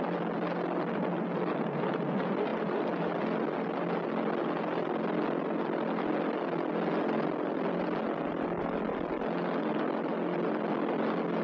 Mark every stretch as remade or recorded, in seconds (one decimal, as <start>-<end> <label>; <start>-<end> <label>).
0.0-11.4 recorded